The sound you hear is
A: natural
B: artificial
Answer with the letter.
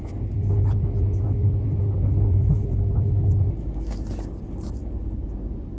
A